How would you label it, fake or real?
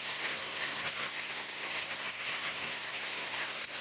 fake